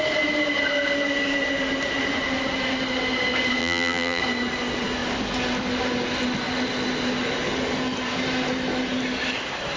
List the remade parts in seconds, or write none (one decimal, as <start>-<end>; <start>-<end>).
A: 3.6-4.2